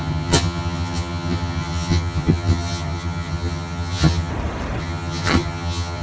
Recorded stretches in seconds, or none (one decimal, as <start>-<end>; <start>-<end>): 4.3-4.8